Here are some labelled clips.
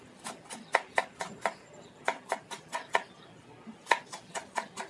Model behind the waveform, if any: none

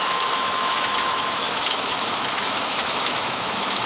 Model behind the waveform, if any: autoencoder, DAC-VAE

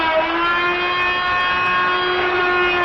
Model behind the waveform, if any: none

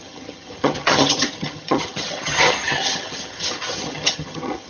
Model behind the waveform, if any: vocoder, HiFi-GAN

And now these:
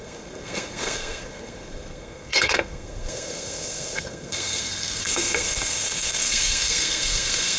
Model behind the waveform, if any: codec, SNAC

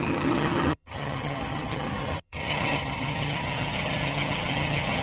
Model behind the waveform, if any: vocoder, HiFi-GAN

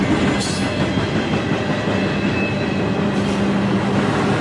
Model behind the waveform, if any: none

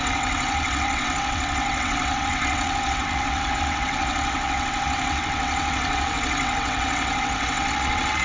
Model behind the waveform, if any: vocoder, WaveNeXt